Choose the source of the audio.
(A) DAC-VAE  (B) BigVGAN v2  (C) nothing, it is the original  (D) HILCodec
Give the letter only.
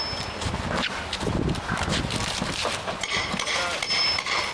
C